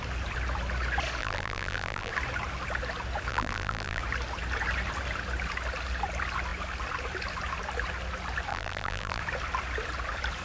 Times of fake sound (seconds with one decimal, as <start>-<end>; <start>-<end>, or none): 1.2-2.1; 3.3-4.0; 8.5-9.2